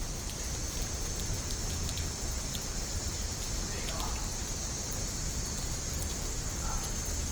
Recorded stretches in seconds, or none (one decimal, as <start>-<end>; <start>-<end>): none